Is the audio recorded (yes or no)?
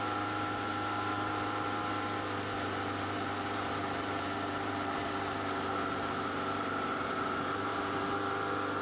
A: no